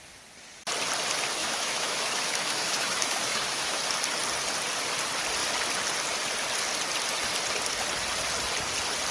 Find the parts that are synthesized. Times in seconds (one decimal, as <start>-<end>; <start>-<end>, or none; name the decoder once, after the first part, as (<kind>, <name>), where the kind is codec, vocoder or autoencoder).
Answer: 1.4-3.8 (autoencoder, DAC-VAE)